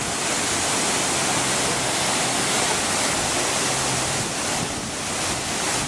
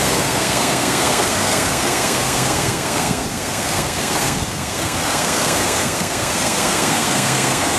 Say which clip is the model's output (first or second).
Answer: second